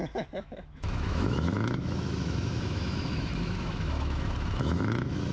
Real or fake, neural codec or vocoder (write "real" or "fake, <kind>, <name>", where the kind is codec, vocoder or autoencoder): fake, autoencoder, DAC-VAE